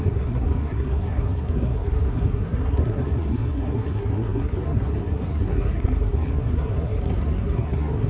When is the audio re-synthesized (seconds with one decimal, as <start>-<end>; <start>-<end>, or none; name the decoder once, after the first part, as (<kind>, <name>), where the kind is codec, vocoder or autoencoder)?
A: 0.0-8.1 (codec, SNAC)